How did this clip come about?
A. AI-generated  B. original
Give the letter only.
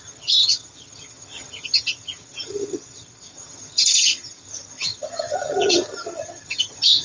A